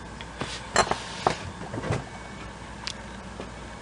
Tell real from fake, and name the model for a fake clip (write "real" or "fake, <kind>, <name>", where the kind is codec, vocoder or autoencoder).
real